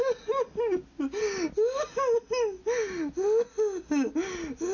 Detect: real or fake real